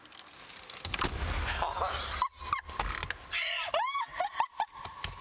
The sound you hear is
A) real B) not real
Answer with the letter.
A